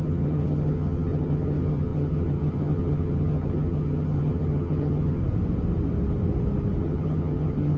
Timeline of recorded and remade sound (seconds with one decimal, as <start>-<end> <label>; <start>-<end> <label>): 0.0-5.2 remade; 5.2-6.8 recorded; 6.8-7.8 remade